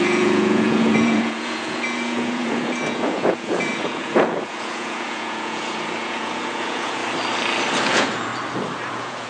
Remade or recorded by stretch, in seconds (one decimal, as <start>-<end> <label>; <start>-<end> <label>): 0.0-7.0 remade; 7.0-7.8 recorded; 7.8-8.3 remade; 8.3-8.9 recorded; 8.9-9.3 remade